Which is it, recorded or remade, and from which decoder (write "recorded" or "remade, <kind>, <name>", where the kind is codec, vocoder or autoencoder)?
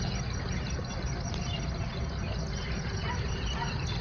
recorded